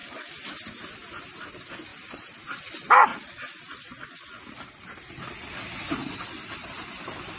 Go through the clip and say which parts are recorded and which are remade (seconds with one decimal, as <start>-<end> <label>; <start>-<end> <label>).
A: 0.0-3.1 recorded; 3.1-4.4 remade; 4.4-7.4 recorded